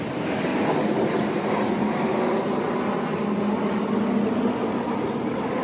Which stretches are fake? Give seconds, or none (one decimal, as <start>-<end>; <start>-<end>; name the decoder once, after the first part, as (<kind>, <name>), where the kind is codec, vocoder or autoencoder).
0.0-0.5 (vocoder, BigVGAN v2); 1.7-2.1